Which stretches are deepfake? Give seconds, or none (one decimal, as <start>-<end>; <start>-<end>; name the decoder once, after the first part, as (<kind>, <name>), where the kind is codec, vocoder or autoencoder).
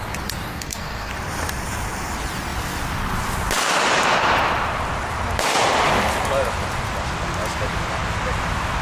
0.5-1.1 (codec, SNAC)